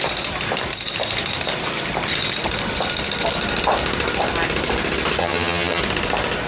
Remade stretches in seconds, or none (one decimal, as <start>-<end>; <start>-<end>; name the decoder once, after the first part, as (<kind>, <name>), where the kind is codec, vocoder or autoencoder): 5.2-5.8 (vocoder, HiFi-GAN)